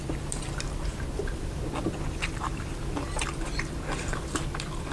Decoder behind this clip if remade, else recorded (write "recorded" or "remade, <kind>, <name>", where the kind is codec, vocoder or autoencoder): remade, vocoder, BigVGAN v2